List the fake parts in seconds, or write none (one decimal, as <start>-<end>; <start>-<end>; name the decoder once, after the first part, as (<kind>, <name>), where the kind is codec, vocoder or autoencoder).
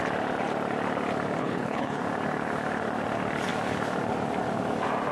1.4-2.0 (codec, HILCodec)